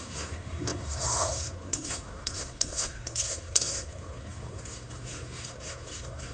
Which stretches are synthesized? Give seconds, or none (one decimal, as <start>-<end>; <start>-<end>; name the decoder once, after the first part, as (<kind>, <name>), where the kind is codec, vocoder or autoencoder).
0.0-6.3 (codec, SNAC)